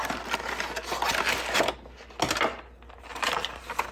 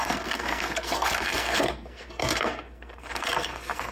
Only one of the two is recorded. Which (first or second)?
first